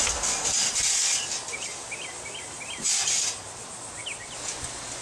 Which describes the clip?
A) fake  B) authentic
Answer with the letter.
B